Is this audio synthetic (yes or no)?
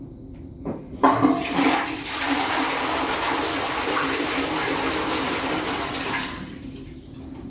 yes